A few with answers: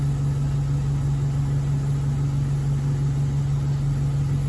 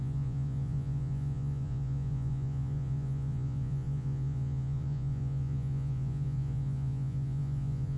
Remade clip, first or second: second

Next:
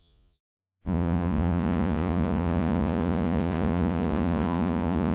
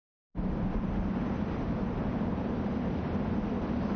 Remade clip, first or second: first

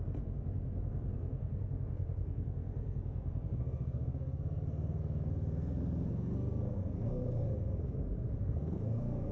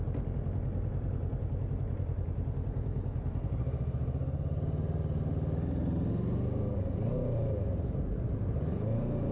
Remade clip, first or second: first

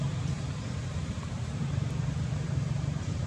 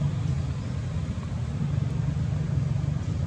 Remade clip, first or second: first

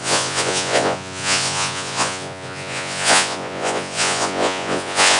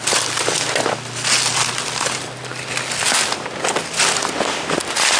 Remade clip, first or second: first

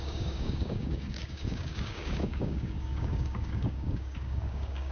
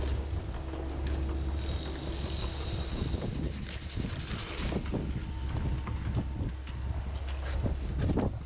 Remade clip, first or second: first